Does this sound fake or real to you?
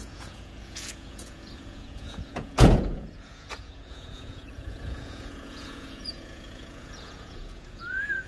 fake